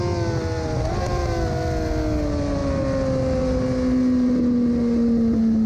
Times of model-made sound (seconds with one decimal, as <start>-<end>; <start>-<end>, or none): none